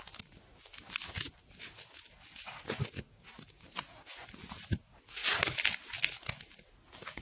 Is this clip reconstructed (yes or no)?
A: no